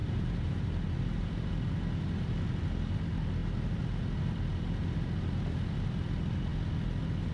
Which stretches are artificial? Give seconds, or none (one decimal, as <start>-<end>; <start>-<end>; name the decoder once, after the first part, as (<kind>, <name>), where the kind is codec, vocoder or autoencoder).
0.0-1.5 (vocoder, BigVGAN v2)